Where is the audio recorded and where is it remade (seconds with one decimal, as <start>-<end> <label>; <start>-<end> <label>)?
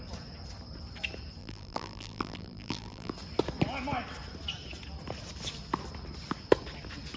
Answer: 0.0-1.4 recorded; 1.4-3.1 remade; 3.1-7.2 recorded